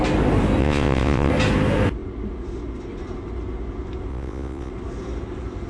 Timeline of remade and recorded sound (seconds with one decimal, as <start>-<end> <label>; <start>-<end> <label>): 0.0-0.6 recorded; 0.6-1.3 remade; 1.3-4.1 recorded; 4.1-4.7 remade; 4.7-5.7 recorded